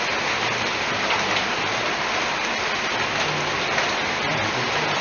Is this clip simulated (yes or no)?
no